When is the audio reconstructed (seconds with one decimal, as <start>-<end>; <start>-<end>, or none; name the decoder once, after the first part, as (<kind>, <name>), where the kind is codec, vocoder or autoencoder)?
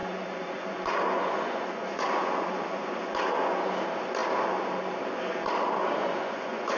0.0-3.7 (vocoder, Vocos); 6.0-6.8